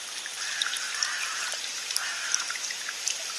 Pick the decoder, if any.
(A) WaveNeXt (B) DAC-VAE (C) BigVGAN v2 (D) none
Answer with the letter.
C